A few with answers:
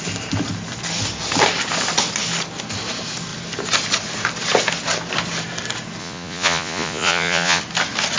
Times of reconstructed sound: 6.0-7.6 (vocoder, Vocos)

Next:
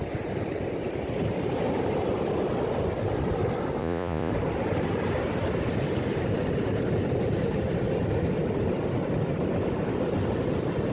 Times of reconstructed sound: 3.8-4.3 (vocoder, Vocos)

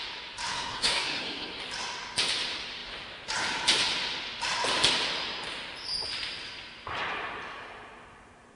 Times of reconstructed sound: 0.5-1.6 (codec, SNAC)

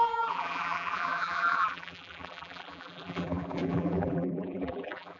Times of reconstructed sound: 0.0-5.2 (vocoder, BigVGAN v2)

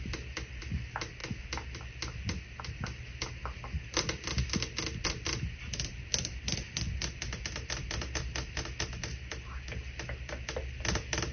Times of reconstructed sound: none

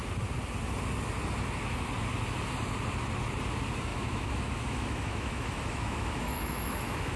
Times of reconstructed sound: 3.9-7.2 (autoencoder, DAC-VAE)

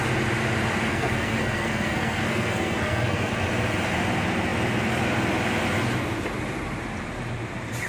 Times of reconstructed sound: 0.9-3.3 (codec, SNAC)

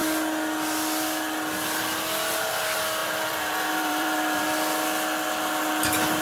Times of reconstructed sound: 3.0-4.4 (vocoder, BigVGAN v2)